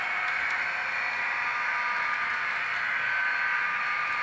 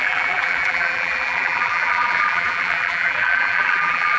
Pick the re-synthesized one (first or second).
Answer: second